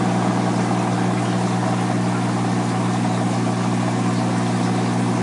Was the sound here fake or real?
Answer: real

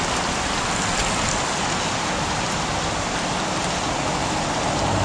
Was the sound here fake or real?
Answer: real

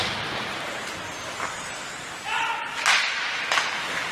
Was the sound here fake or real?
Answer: real